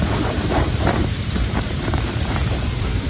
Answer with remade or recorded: remade